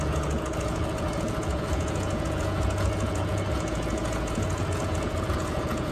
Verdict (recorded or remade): remade